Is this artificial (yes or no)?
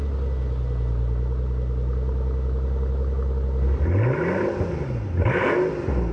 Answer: no